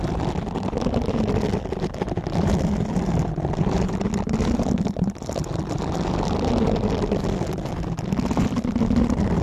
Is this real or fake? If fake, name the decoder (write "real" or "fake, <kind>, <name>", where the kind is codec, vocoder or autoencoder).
real